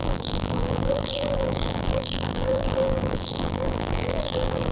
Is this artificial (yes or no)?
yes